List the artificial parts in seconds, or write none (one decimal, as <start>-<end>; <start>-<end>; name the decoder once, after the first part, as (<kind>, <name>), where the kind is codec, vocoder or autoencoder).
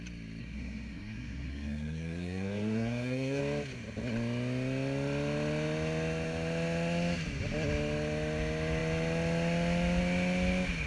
0.4-3.4 (codec, SNAC)